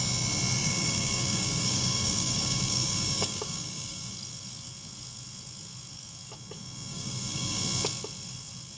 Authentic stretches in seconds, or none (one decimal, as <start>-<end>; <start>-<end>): 0.0-0.6; 4.1-6.9; 7.6-8.8